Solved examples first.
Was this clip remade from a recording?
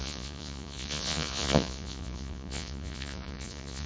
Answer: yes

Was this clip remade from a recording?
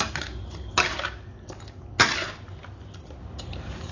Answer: no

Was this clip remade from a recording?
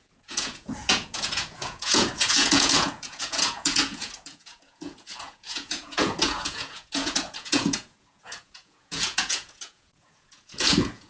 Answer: yes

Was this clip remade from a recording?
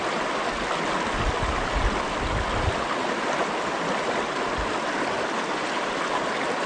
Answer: no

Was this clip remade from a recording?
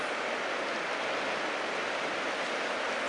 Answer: no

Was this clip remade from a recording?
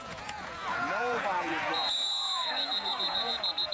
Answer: yes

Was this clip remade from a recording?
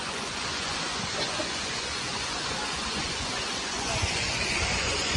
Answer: yes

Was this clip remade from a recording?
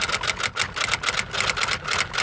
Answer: no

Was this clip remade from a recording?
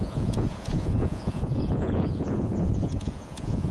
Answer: yes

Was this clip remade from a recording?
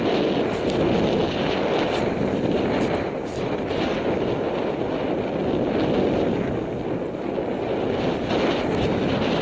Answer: no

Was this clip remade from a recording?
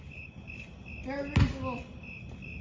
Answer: no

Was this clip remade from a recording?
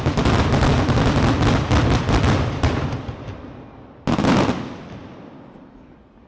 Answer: no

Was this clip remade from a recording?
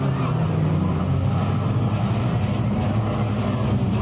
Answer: no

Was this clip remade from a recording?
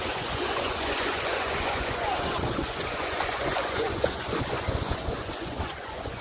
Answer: yes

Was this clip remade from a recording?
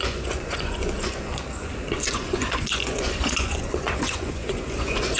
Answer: yes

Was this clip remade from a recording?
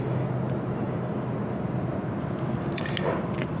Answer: no